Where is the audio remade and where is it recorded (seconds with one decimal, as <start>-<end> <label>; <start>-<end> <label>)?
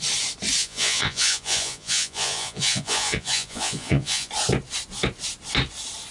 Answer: 0.0-0.6 recorded; 0.6-4.3 remade; 4.3-6.1 recorded